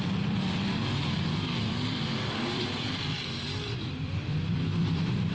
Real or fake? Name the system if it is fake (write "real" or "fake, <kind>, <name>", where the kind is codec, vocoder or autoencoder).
fake, vocoder, BigVGAN v2